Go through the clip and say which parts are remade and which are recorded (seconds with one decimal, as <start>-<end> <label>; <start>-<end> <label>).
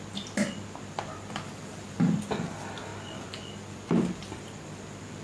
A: 0.0-5.2 recorded